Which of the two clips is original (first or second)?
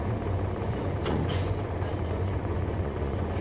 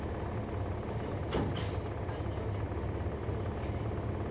second